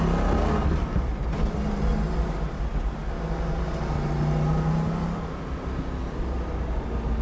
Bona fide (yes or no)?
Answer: yes